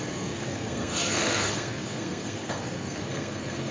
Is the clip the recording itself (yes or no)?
no